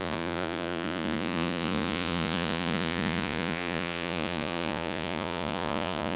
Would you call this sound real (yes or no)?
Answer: no